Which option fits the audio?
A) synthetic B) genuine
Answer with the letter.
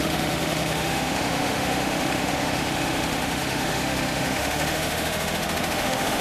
A